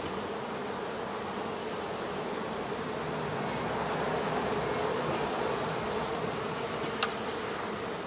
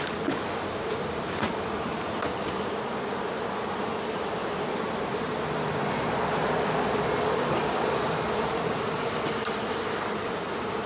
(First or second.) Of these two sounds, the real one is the first